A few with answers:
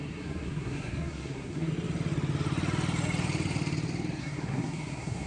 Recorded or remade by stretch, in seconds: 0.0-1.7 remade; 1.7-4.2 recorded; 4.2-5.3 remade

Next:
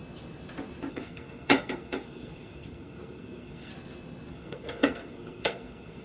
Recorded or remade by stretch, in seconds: 0.0-0.9 recorded; 0.9-3.7 remade; 3.7-4.3 recorded; 4.3-6.0 remade

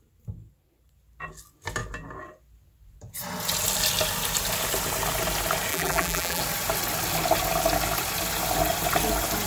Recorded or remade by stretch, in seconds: 0.0-5.7 recorded; 5.7-6.4 remade; 6.4-9.5 recorded

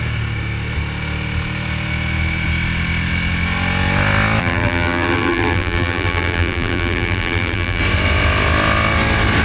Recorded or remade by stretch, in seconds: 0.0-4.4 recorded; 4.4-7.8 remade; 7.8-9.4 recorded

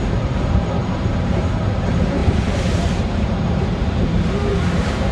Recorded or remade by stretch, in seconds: 0.0-5.1 remade